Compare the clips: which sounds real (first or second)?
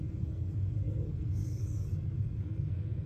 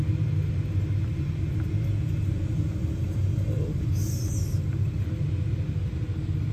second